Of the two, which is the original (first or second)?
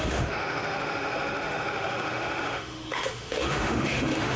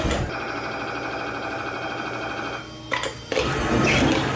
second